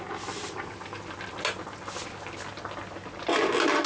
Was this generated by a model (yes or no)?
no